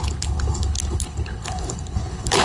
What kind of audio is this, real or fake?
fake